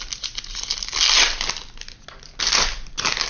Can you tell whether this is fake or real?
real